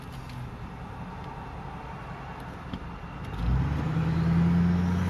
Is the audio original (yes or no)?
yes